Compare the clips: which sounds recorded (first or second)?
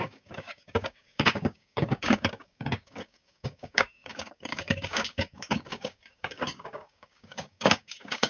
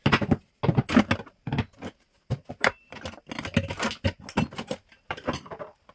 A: second